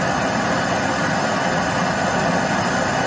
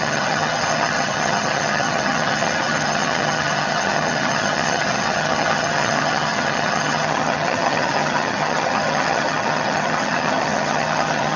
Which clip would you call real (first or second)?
first